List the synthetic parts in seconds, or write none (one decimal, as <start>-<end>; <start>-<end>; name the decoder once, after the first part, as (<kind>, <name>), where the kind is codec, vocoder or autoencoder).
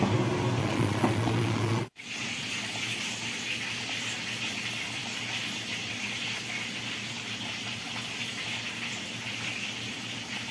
0.6-2.5 (vocoder, Vocos)